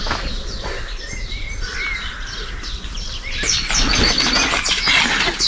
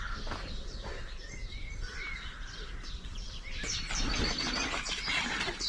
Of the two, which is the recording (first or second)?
first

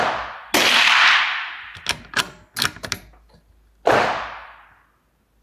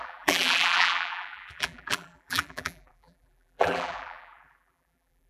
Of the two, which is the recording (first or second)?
first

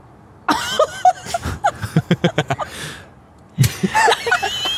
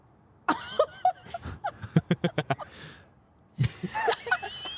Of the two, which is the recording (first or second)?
first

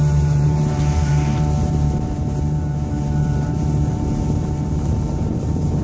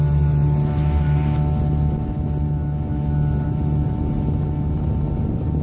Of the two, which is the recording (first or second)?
second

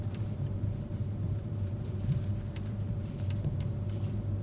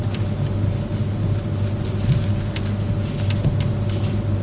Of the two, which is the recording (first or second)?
second